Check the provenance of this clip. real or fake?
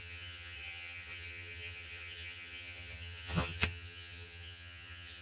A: fake